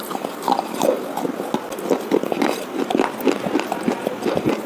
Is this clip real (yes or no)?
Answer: yes